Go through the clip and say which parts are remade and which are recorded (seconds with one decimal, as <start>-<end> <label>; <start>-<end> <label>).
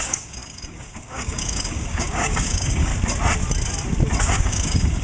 0.0-2.9 remade; 2.9-4.3 recorded; 4.3-5.0 remade